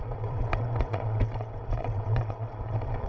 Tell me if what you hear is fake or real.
fake